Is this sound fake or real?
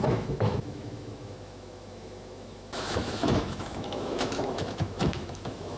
fake